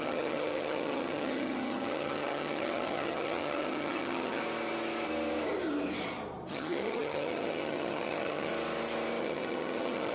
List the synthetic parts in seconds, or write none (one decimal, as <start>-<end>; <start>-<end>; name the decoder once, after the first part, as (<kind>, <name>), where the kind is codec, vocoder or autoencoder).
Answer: 0.0-4.4 (vocoder, HiFi-GAN); 6.5-8.5; 9.2-10.1